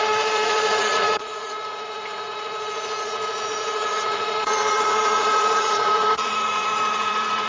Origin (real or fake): fake